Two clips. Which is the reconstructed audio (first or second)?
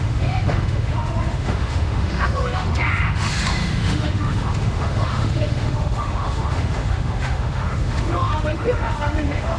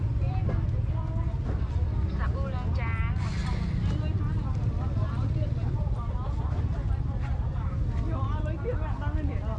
first